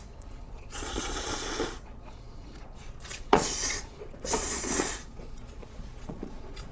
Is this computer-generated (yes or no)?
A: yes